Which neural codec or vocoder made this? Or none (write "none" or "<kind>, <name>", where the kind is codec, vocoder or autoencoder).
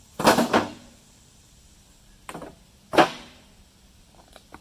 vocoder, BigVGAN v2